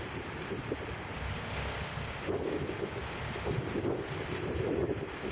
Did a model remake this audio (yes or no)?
no